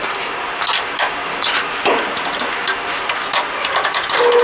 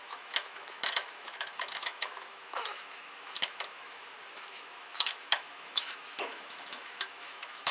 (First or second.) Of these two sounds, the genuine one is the first